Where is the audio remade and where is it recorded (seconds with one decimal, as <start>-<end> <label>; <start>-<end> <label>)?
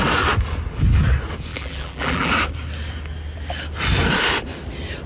0.0-1.5 recorded; 1.5-2.3 remade; 2.3-5.1 recorded